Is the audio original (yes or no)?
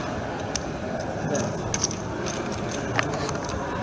yes